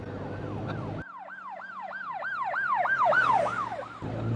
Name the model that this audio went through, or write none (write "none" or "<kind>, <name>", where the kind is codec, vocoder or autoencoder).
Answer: none